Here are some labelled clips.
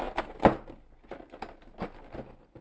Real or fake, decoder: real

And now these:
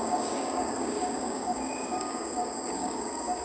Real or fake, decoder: fake, codec, DAC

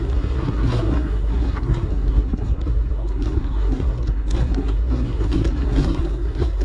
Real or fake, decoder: fake, codec, SNAC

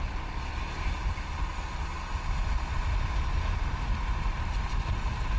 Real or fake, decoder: real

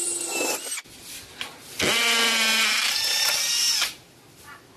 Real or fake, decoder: real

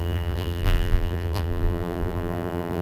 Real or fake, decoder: fake, vocoder, BigVGAN v2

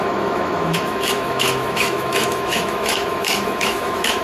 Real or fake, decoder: fake, autoencoder, DAC-VAE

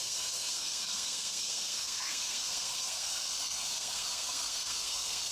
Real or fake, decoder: fake, codec, SNAC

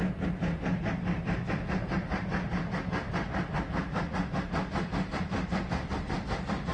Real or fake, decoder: real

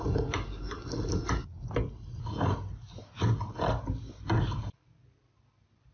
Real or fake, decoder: real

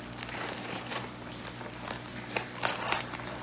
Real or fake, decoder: real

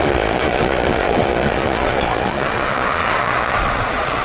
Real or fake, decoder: fake, vocoder, Vocos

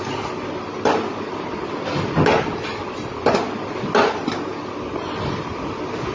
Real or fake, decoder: real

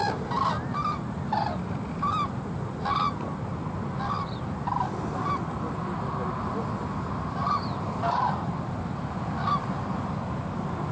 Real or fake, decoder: real